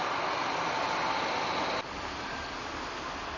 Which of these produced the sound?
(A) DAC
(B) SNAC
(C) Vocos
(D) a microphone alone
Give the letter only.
D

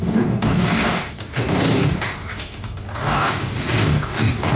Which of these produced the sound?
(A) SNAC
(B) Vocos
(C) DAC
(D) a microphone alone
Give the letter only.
C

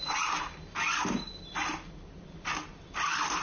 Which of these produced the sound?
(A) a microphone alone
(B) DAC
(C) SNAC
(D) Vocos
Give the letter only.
A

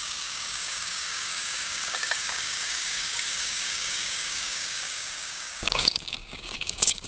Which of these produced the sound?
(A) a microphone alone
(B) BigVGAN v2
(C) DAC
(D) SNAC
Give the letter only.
C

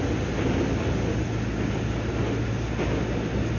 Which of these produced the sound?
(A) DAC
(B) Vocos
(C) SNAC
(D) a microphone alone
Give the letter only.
D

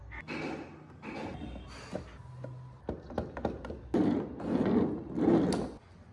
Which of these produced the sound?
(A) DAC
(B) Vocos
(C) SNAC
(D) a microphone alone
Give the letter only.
D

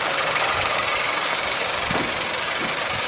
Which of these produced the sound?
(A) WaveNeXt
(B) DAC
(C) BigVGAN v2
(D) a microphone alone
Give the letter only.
B